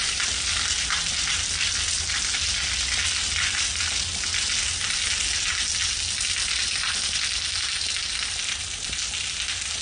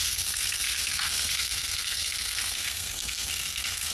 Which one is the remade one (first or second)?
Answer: second